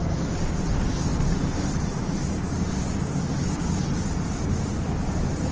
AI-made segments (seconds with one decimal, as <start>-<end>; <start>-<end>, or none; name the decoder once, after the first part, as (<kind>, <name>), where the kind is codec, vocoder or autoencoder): none